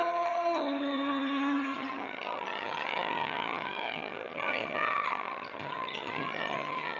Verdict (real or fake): fake